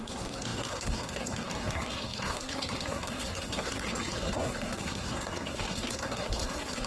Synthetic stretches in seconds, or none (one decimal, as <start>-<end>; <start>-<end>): 0.0-6.9